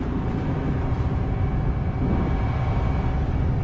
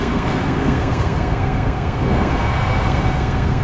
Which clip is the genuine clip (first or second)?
first